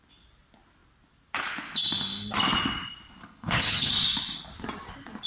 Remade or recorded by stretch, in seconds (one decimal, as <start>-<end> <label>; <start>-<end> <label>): 0.0-3.2 recorded; 3.2-3.9 remade; 3.9-5.3 recorded